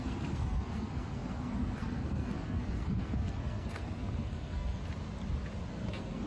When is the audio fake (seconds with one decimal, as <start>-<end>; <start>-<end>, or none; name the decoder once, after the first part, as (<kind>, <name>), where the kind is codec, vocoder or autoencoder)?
0.0-4.8 (codec, SNAC); 5.7-6.3